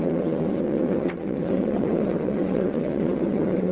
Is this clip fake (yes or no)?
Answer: yes